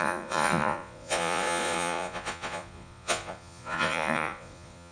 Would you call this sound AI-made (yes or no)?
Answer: yes